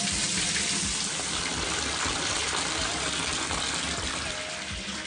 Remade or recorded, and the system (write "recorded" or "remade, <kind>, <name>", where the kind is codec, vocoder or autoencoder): recorded